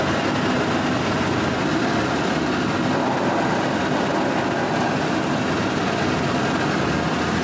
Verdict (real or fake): real